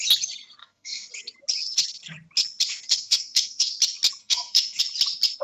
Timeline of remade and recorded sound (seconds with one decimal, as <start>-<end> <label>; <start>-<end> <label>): 0.0-0.6 recorded; 0.6-1.1 remade; 1.1-2.9 recorded; 2.9-3.7 remade; 3.7-4.2 recorded; 4.2-4.8 remade; 4.8-5.4 recorded